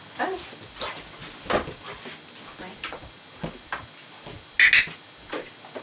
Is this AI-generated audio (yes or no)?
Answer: no